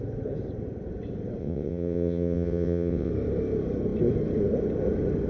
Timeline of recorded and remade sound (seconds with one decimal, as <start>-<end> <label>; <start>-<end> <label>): 0.0-1.4 recorded; 1.4-3.1 remade; 3.1-5.3 recorded